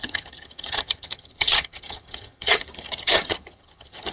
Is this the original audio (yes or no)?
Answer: no